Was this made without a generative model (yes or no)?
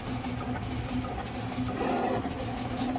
yes